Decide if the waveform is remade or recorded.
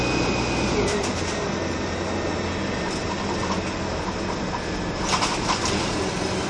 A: recorded